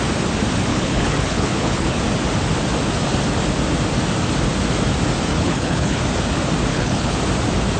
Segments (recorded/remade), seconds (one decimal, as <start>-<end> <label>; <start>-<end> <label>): 0.0-0.7 recorded; 0.7-2.0 remade; 2.0-5.3 recorded; 5.3-6.0 remade; 6.0-6.7 recorded; 6.7-7.2 remade; 7.2-7.8 recorded